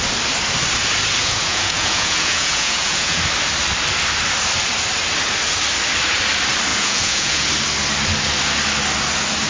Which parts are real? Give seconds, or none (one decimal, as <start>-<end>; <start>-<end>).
0.0-1.2; 3.2-6.7; 7.5-9.5